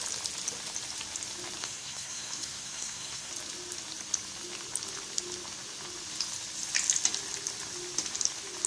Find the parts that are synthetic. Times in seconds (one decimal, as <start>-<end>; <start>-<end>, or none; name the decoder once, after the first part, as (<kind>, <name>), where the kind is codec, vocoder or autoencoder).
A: 1.6-3.3 (codec, SNAC)